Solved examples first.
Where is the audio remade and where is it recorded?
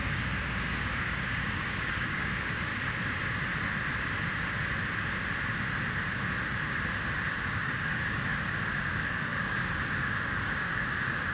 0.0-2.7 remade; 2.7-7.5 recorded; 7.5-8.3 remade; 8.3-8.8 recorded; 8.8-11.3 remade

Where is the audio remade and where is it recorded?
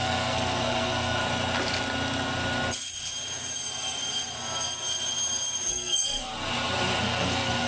0.0-1.2 remade; 1.2-5.7 recorded; 5.7-6.3 remade; 6.3-7.0 recorded; 7.0-7.7 remade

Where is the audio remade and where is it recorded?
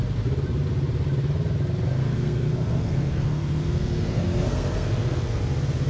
0.0-2.0 recorded; 2.0-5.4 remade; 5.4-5.9 recorded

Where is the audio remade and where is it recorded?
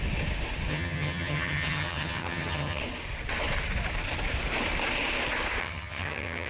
0.0-0.7 recorded; 0.7-2.8 remade; 2.8-5.6 recorded; 5.6-6.5 remade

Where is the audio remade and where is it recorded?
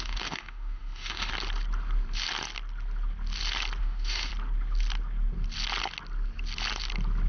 0.0-1.3 remade; 1.3-3.8 recorded; 3.8-4.3 remade; 4.3-7.3 recorded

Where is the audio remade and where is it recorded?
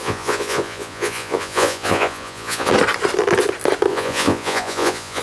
0.0-2.7 remade; 2.7-3.9 recorded; 3.9-5.2 remade